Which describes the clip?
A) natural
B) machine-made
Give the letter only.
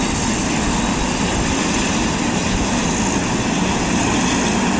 A